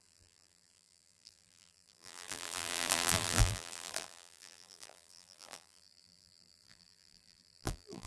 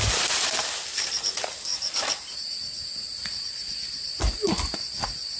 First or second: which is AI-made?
first